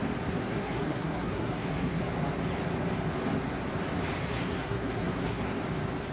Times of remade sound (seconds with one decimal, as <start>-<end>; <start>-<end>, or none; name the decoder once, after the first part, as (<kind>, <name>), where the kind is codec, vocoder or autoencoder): 0.4-2.0 (codec, SNAC); 4.2-5.6